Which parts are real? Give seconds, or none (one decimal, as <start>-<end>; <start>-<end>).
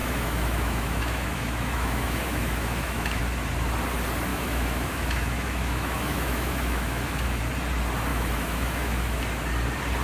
3.2-4.3; 7.4-8.1; 9.2-10.0